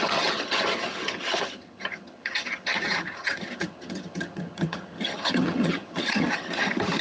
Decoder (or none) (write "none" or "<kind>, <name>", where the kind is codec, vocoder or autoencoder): vocoder, HiFi-GAN